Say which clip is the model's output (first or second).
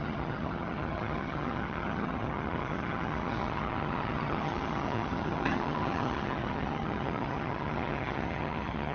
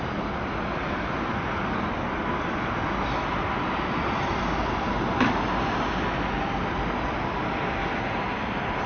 first